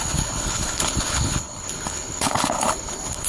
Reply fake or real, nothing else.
fake